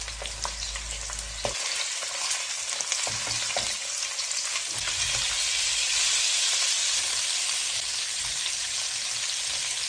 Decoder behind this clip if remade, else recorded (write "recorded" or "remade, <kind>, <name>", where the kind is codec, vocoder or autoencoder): recorded